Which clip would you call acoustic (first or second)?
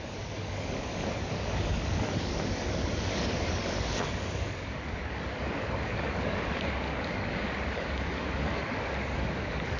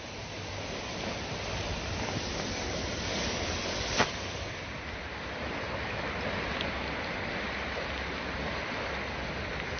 second